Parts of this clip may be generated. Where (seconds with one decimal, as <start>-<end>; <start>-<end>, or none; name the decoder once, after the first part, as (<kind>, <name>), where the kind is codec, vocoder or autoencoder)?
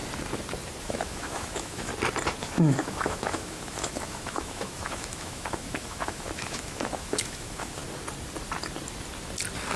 0.8-1.9 (autoencoder, DAC-VAE); 2.4-7.8